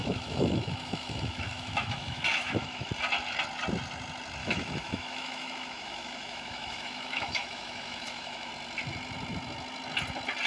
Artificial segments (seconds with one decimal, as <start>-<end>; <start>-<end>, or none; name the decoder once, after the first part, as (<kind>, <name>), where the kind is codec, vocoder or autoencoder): 0.0-2.9 (autoencoder, DAC-VAE); 4.4-8.5